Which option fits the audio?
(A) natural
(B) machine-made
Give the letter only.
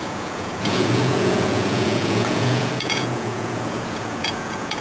B